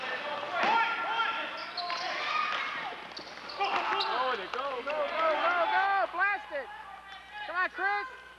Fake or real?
real